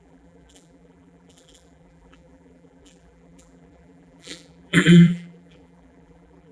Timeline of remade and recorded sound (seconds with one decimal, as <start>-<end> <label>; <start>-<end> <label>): 0.0-6.5 remade